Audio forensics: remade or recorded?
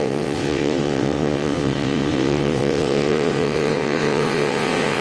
remade